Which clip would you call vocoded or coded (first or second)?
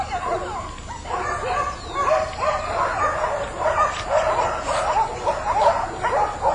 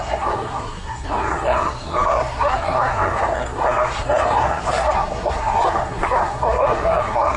second